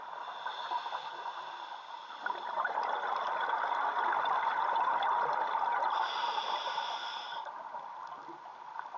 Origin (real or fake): real